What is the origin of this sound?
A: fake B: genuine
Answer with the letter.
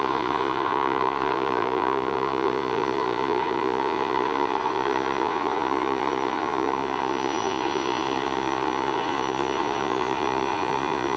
A